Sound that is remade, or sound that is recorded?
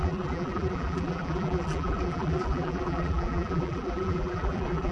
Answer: remade